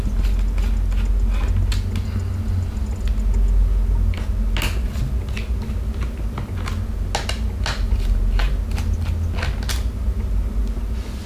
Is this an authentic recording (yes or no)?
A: yes